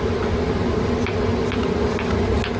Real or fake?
real